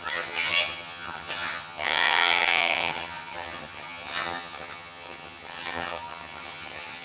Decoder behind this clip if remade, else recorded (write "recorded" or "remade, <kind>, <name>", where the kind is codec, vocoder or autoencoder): remade, vocoder, HiFi-GAN